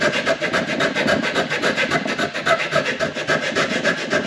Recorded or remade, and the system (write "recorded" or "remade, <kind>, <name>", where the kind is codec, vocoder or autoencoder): recorded